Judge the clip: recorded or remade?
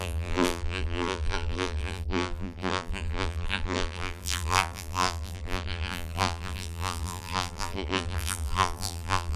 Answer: remade